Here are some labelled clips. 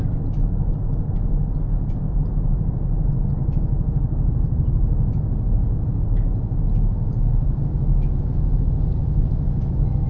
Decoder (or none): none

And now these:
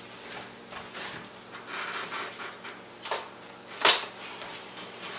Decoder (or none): none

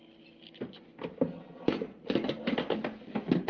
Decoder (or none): none